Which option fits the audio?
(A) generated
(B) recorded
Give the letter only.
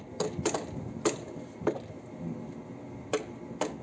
B